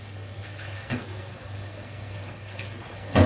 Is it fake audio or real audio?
fake